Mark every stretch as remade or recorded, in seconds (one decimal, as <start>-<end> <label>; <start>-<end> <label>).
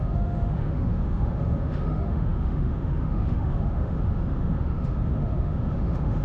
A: 0.0-6.2 remade